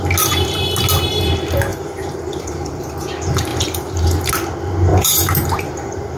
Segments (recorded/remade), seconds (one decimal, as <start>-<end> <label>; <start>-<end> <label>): 0.0-1.7 recorded; 1.7-2.9 remade; 2.9-3.5 recorded; 3.5-4.3 remade; 4.3-4.9 recorded; 4.9-6.2 remade